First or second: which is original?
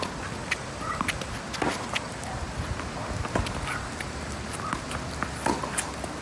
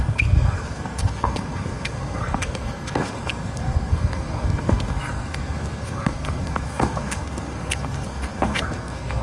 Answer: first